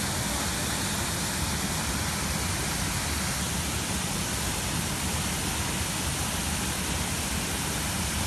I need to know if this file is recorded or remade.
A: recorded